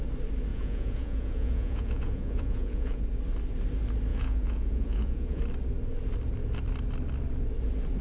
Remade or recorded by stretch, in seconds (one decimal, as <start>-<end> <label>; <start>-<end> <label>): 0.0-0.5 recorded; 0.5-3.0 remade; 3.0-4.1 recorded; 4.1-5.4 remade; 5.4-8.0 recorded